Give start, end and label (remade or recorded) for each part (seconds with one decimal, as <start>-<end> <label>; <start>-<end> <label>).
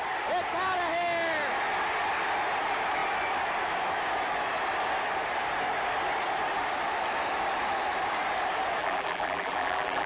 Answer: 0.0-8.8 recorded; 8.8-10.1 remade